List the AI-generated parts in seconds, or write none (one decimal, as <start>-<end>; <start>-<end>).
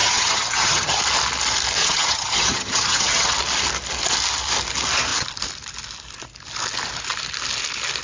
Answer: 0.0-1.0; 1.8-3.3